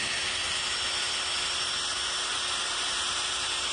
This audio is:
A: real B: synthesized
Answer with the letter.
A